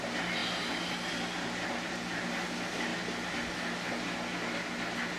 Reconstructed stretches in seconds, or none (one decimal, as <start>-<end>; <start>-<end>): none